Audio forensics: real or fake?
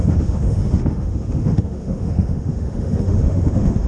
fake